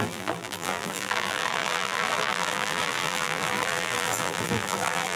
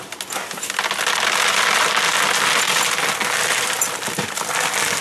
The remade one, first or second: first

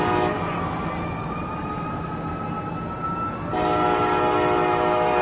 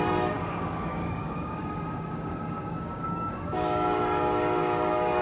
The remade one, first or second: second